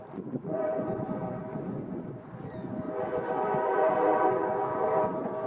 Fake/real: fake